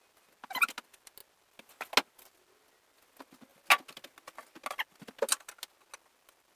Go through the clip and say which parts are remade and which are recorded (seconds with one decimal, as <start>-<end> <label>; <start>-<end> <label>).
0.0-6.6 recorded